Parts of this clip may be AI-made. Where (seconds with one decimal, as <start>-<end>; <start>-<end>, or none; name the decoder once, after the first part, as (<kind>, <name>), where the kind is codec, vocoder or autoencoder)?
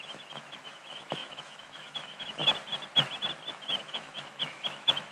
0.0-2.4 (autoencoder, DAC-VAE); 3.5-5.1